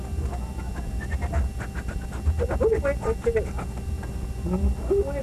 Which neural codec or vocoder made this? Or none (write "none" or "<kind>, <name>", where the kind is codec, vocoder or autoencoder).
none